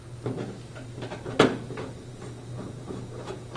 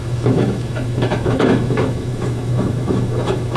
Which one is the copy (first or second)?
second